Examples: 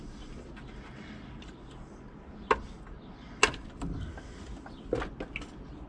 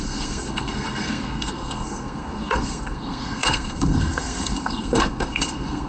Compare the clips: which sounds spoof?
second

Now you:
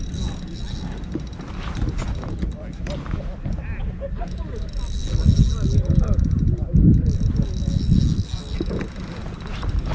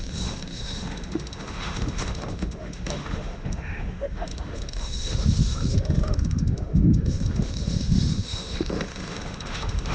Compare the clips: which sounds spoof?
second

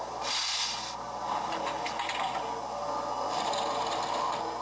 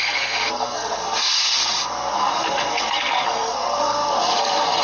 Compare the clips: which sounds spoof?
second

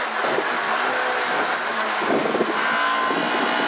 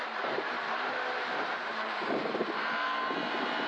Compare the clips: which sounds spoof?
second